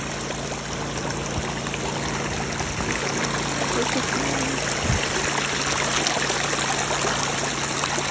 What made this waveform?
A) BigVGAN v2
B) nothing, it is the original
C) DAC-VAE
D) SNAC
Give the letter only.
B